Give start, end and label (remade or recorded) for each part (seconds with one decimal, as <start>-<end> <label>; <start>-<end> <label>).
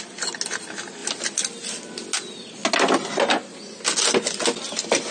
0.0-5.1 recorded